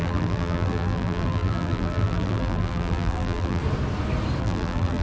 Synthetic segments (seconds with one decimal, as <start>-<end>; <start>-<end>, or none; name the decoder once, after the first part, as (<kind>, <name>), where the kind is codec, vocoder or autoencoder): 0.0-3.6 (vocoder, BigVGAN v2); 4.4-5.0